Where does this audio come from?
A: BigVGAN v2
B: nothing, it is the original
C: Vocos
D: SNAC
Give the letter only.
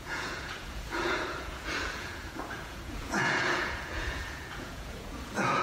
C